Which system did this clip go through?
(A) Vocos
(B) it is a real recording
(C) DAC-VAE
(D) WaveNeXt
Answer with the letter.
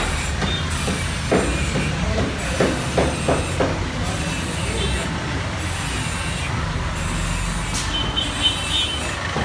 B